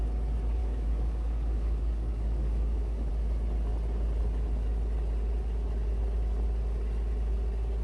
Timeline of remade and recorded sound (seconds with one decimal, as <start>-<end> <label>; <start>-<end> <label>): 0.0-0.6 recorded; 0.6-3.1 remade; 3.1-7.8 recorded